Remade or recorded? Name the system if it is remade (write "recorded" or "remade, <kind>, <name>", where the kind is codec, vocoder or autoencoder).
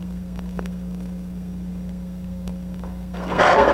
remade, codec, SNAC